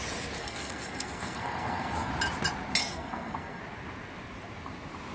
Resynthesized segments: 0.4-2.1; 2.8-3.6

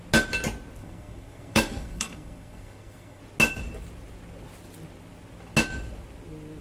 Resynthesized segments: 0.8-3.2